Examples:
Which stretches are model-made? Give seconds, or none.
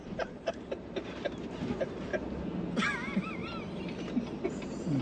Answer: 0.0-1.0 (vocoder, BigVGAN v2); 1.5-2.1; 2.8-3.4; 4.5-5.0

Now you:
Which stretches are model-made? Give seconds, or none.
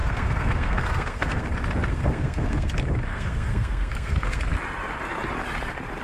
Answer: 0.0-1.5 (codec, SNAC); 1.9-2.7; 3.1-4.4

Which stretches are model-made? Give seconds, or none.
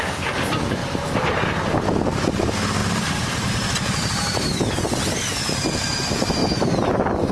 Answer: 0.8-1.5 (vocoder, BigVGAN v2); 2.8-3.5; 6.4-7.3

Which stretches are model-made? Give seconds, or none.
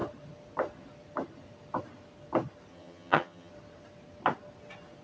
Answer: 2.7-3.5 (vocoder, HiFi-GAN)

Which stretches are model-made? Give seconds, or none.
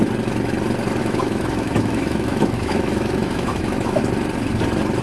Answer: 1.0-4.0 (autoencoder, DAC-VAE)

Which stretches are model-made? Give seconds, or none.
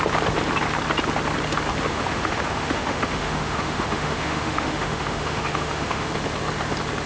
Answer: 1.9-6.1 (autoencoder, DAC-VAE)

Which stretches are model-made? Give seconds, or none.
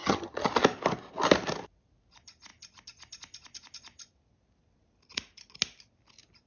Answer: 0.0-0.5 (vocoder, HiFi-GAN)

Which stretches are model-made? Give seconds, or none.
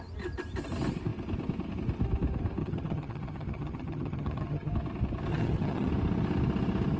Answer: 2.6-4.7 (vocoder, HiFi-GAN); 5.3-5.9